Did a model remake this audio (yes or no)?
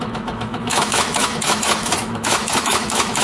yes